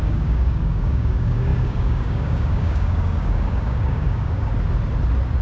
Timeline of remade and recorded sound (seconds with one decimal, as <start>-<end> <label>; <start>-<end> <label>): 0.0-4.5 remade; 4.5-5.4 recorded